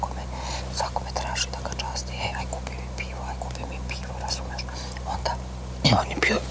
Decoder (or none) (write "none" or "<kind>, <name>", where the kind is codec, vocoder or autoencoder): none